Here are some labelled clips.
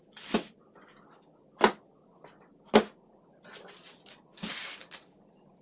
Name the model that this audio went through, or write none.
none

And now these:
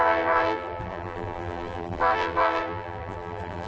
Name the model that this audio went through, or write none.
vocoder, BigVGAN v2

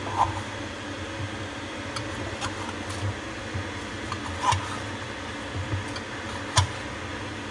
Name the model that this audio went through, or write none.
none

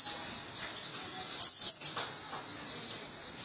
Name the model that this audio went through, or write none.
none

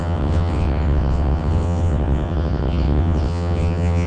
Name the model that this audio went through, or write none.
vocoder, WaveNeXt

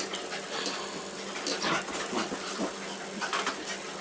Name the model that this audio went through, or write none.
none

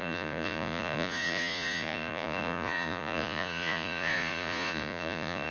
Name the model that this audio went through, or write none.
vocoder, Vocos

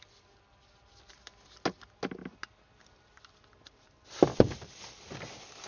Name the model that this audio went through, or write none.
none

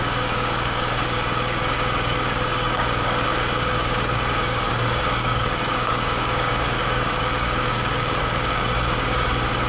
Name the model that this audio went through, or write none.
codec, DAC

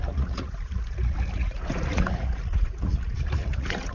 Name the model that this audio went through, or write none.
vocoder, Vocos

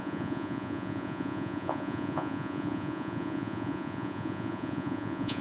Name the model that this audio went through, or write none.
vocoder, Vocos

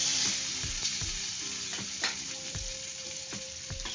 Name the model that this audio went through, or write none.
vocoder, BigVGAN v2